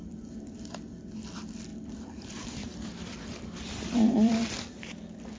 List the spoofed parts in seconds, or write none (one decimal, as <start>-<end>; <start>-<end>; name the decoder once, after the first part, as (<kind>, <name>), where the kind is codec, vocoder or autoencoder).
1.7-4.5 (vocoder, BigVGAN v2)